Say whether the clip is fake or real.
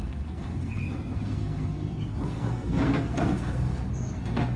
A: fake